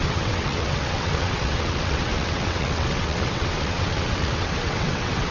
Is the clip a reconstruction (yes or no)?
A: yes